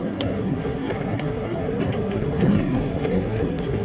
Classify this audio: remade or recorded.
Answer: remade